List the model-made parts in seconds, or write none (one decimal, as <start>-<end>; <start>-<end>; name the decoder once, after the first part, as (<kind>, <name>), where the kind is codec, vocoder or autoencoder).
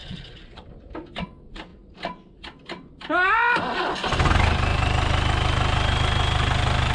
0.0-0.6 (vocoder, Vocos)